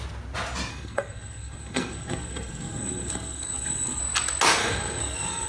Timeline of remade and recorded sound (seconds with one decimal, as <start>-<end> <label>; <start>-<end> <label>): 0.0-0.7 recorded; 0.7-4.0 remade; 4.0-4.6 recorded; 4.6-5.5 remade